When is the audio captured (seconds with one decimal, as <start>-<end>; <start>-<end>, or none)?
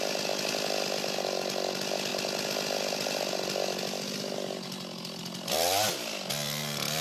0.0-7.0